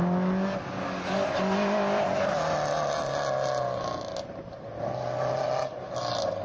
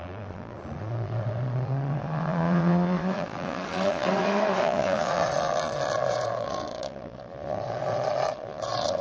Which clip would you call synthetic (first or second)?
second